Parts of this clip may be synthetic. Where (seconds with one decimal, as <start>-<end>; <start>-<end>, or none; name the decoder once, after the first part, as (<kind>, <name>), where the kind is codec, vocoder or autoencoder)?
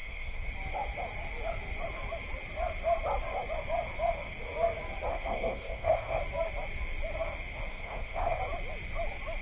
0.0-0.5 (codec, SNAC); 5.1-6.2; 7.7-8.4